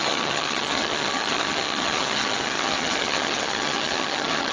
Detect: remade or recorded remade